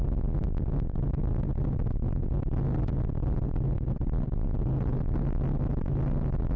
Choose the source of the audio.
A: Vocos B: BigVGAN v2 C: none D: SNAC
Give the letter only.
C